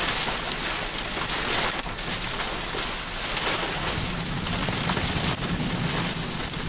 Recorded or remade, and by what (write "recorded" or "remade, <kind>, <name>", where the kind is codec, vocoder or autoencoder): recorded